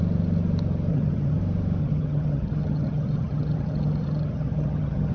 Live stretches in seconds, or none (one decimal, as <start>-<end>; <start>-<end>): 0.0-0.9; 1.4-1.8